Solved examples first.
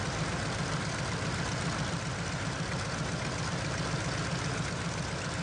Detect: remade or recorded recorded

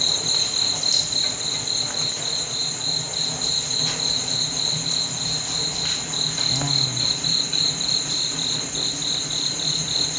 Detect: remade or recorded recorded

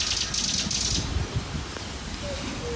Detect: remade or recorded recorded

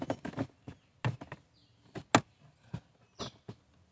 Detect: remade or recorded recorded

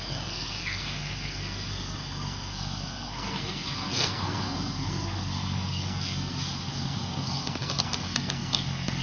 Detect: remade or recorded remade